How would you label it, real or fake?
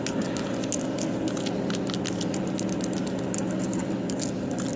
real